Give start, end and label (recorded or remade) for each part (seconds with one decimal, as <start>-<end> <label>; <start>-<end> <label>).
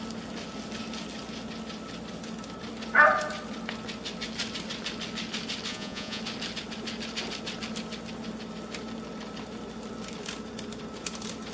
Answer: 0.0-5.7 recorded; 5.7-6.2 remade; 6.2-11.5 recorded